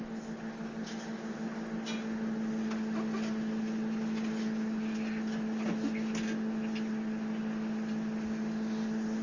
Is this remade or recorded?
recorded